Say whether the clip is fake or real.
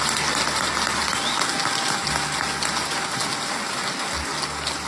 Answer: real